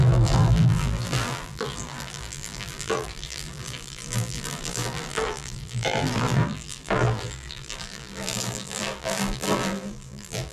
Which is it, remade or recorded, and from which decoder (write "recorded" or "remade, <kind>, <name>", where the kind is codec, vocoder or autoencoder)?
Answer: remade, vocoder, BigVGAN v2